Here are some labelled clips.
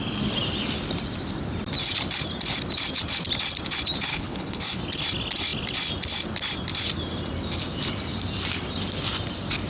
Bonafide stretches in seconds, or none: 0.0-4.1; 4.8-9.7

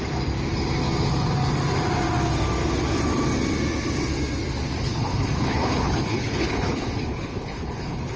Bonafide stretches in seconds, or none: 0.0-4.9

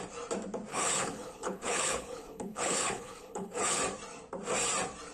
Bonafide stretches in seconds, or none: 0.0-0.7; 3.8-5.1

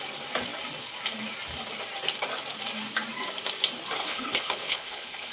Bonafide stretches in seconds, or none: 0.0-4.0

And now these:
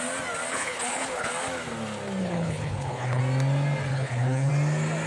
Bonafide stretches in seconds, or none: 0.0-0.5; 1.3-2.2; 3.2-3.9; 4.5-5.1

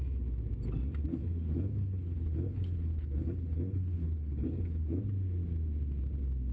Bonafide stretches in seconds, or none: 0.0-1.1; 5.0-6.5